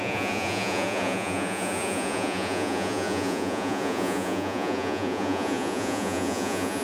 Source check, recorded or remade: remade